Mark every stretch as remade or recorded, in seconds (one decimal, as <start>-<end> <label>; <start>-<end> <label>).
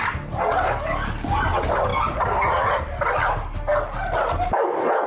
0.0-5.1 recorded